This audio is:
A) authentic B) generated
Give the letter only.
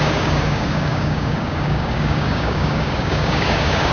B